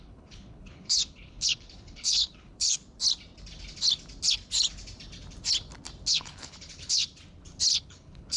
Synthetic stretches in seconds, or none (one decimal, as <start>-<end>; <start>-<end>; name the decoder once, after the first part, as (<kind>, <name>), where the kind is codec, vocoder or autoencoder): 0.0-2.8 (codec, HILCodec); 6.1-7.0; 7.8-8.4